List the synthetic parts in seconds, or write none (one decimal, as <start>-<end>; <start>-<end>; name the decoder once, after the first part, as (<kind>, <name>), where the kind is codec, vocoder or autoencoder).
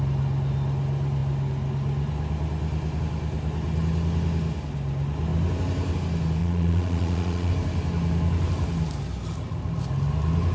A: 6.4-7.5 (vocoder, Vocos)